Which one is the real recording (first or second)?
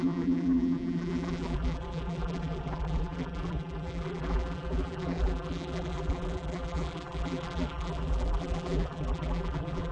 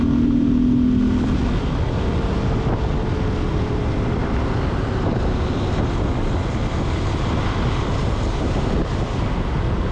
second